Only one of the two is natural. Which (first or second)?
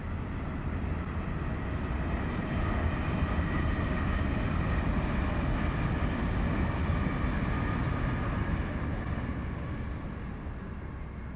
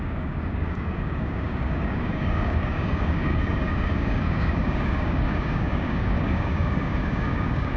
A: first